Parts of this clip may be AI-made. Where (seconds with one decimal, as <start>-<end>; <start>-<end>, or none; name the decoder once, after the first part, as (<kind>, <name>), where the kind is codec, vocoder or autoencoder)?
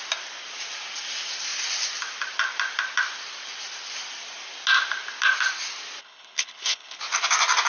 6.0-7.0 (codec, HILCodec)